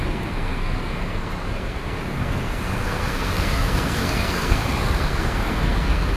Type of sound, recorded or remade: remade